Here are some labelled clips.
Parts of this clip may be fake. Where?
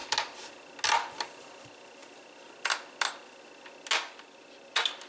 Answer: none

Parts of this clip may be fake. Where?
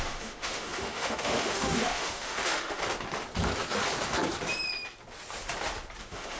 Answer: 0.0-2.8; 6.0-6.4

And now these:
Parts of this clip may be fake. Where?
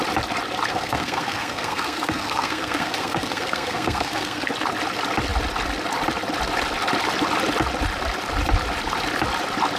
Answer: 0.7-4.5